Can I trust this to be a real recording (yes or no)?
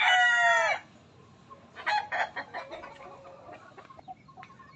yes